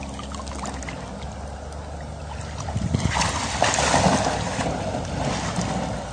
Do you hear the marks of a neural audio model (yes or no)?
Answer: no